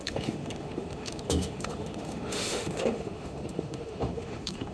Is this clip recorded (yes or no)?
no